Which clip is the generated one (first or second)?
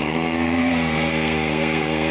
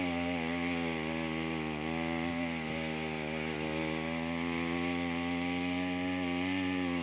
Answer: first